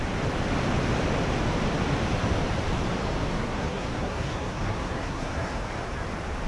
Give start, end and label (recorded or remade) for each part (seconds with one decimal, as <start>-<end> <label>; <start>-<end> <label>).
0.0-3.3 recorded; 3.3-5.6 remade; 5.6-6.5 recorded